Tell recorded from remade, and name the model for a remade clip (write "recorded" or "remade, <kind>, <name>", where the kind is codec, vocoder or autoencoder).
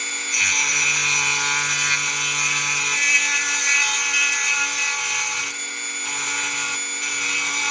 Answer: recorded